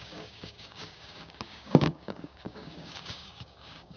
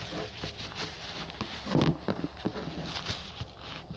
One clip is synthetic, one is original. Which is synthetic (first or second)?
first